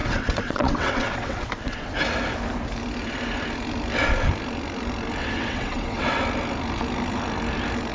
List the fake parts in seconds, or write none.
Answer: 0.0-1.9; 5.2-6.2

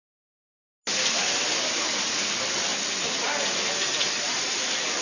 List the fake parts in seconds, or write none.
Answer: none

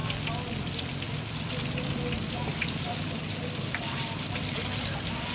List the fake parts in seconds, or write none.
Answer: none